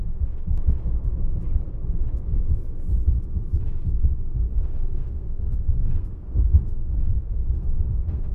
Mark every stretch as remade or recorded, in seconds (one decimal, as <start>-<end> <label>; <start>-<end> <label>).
0.0-4.5 recorded; 4.5-8.3 remade

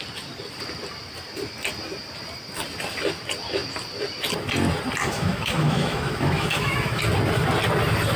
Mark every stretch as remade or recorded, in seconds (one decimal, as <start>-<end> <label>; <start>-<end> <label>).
0.0-5.0 recorded; 5.0-7.0 remade; 7.0-8.2 recorded

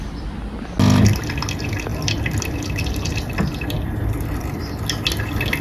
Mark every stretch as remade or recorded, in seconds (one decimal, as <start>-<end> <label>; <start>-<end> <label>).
0.0-5.6 recorded

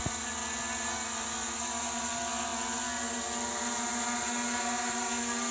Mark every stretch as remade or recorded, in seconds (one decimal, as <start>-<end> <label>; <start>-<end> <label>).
0.0-5.5 recorded

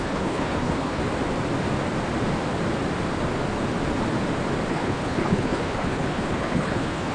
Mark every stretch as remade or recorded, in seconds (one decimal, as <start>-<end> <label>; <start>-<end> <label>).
0.0-1.0 remade; 1.0-4.7 recorded; 4.7-7.1 remade

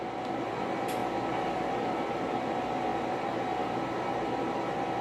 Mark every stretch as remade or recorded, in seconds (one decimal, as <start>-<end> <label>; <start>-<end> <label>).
0.0-5.0 recorded